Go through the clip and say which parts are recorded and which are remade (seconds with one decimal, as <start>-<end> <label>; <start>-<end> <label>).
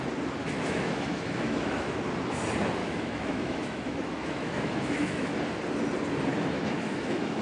0.0-0.4 recorded; 0.4-2.0 remade; 2.0-2.8 recorded; 2.8-5.4 remade; 5.4-6.3 recorded; 6.3-7.4 remade